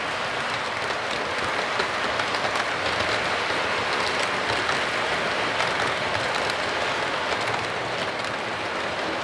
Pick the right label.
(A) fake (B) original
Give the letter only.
B